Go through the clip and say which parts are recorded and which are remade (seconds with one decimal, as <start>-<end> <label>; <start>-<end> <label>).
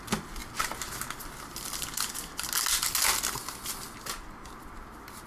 0.0-5.3 recorded